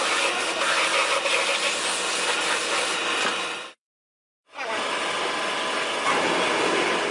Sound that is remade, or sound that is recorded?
recorded